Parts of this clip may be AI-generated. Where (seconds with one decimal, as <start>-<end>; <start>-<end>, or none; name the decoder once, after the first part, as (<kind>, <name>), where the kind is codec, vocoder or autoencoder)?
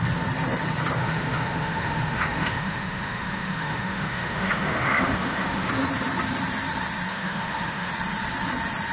1.0-5.7 (autoencoder, DAC-VAE); 7.1-7.9